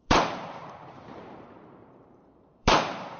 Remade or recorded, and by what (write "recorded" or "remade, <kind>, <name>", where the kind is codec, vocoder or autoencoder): remade, vocoder, BigVGAN v2